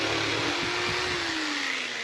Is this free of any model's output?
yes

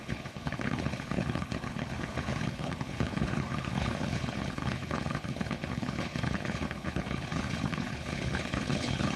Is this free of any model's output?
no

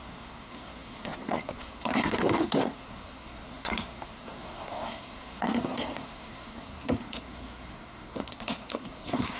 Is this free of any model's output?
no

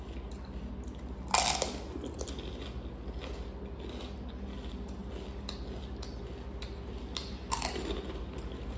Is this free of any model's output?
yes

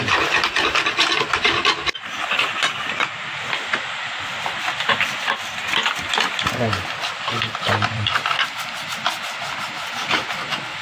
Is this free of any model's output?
no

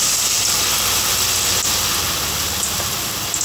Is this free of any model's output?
yes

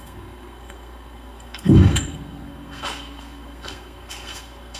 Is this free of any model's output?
no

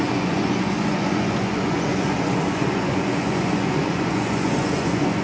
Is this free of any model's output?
no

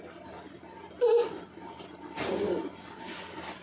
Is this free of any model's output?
no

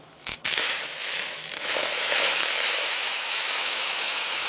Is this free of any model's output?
no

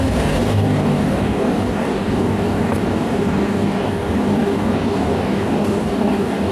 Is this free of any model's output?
no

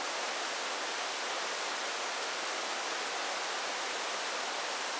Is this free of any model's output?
yes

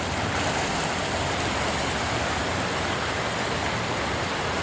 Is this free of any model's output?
yes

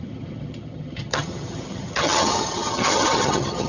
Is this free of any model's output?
no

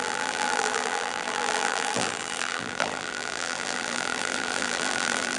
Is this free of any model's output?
no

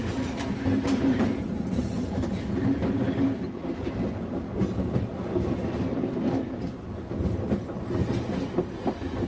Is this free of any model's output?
yes